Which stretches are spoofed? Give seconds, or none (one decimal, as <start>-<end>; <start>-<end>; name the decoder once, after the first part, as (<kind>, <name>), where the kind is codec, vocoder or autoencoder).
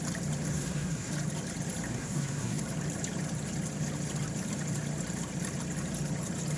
0.5-1.1 (codec, SNAC); 1.9-2.6